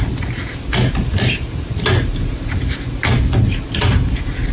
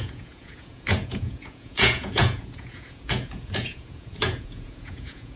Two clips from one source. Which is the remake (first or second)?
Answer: second